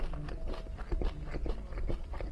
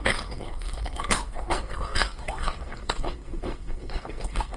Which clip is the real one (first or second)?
first